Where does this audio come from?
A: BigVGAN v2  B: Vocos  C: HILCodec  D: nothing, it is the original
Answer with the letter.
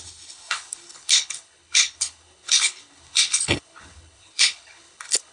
C